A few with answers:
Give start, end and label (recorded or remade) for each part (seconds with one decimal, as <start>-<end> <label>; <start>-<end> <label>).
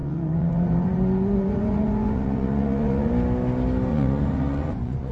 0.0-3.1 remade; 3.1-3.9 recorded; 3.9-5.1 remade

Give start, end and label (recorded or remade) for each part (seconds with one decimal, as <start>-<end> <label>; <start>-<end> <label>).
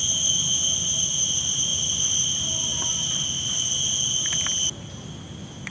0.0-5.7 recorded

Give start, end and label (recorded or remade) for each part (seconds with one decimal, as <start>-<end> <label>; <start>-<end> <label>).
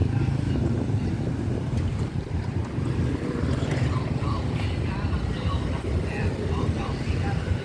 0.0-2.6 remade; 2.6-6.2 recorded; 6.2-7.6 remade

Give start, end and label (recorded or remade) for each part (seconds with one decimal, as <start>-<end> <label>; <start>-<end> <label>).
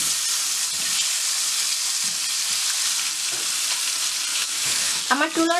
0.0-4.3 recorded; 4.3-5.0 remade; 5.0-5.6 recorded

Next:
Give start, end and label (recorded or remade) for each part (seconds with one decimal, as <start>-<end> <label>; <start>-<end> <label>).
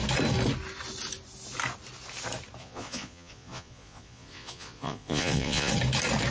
0.0-2.6 recorded; 2.6-5.7 remade; 5.7-6.3 recorded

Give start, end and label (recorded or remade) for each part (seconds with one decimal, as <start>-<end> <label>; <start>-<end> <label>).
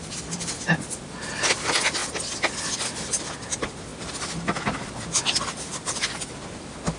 0.0-7.0 recorded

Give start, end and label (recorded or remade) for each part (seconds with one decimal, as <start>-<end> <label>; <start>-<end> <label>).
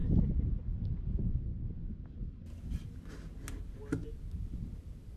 0.0-5.2 recorded